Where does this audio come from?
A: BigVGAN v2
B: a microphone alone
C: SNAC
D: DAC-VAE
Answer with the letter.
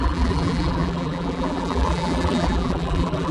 A